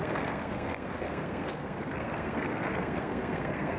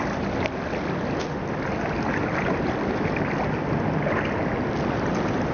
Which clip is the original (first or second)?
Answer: second